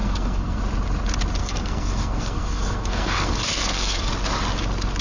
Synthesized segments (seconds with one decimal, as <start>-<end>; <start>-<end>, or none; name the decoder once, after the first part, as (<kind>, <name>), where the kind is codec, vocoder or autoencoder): 0.0-0.6 (codec, SNAC); 1.4-4.1